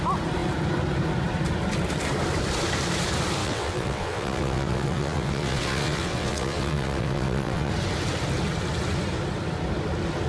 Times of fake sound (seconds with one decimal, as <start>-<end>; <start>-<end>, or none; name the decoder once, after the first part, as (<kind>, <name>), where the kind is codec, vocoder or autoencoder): 3.4-7.7 (vocoder, WaveNeXt)